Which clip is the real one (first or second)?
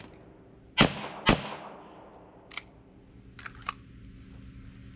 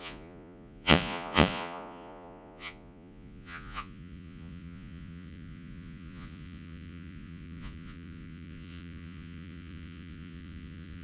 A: first